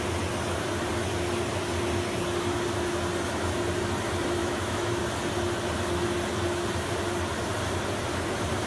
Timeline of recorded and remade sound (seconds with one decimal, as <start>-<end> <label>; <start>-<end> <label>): 0.0-4.4 recorded; 4.4-5.0 remade; 5.0-8.7 recorded